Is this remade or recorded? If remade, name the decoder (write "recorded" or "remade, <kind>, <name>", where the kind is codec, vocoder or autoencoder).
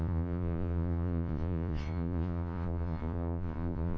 remade, vocoder, Vocos